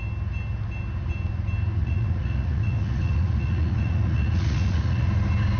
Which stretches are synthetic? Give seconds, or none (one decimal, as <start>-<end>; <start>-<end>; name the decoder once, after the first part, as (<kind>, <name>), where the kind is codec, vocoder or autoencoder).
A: 1.8-5.1 (vocoder, Vocos)